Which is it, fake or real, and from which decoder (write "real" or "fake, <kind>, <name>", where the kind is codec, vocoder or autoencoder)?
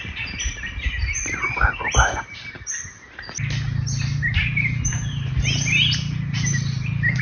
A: real